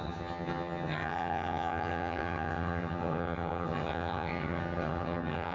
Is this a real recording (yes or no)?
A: no